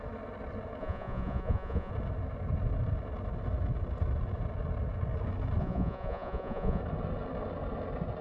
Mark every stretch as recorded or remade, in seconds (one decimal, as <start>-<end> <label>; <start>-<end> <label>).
0.0-0.8 recorded; 0.8-1.9 remade; 1.9-5.6 recorded; 5.6-6.8 remade; 6.8-8.2 recorded